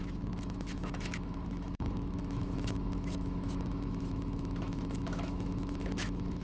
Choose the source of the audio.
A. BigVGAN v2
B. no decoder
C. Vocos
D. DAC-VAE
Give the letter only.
D